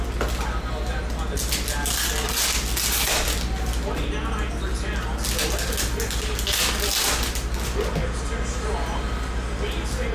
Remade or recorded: recorded